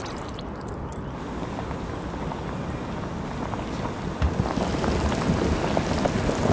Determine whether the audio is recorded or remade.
recorded